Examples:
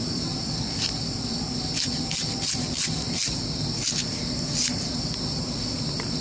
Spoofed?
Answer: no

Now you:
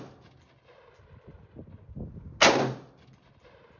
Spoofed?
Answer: no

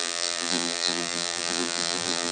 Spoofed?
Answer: yes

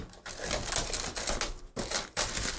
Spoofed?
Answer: no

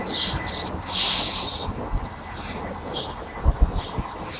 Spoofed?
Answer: no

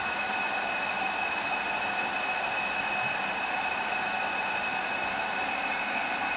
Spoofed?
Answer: no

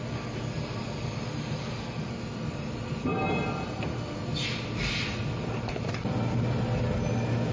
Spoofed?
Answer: no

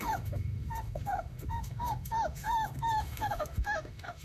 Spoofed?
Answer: yes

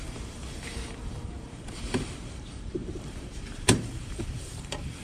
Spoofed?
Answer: yes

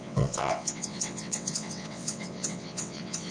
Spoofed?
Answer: yes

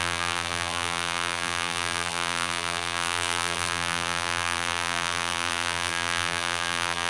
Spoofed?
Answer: yes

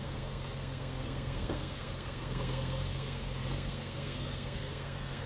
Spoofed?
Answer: yes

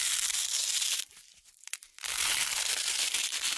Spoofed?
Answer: yes